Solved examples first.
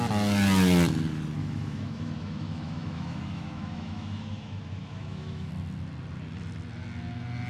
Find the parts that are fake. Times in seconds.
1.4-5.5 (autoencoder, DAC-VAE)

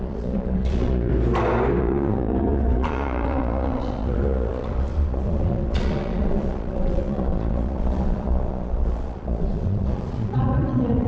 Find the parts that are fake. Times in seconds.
0.0-1.1 (vocoder, Vocos); 1.8-11.1

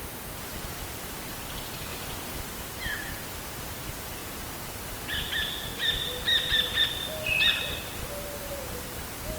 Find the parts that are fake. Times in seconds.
1.9-2.4 (vocoder, Vocos); 4.2-4.7